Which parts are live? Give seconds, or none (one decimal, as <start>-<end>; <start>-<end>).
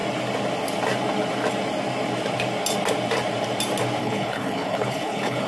0.0-4.0